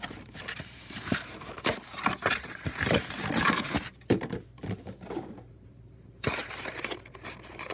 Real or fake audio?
fake